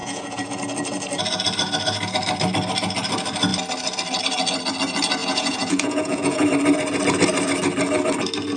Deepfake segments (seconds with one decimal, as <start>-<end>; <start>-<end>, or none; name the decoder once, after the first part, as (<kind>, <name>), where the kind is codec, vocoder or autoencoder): 0.0-0.6 (vocoder, Vocos); 5.2-6.5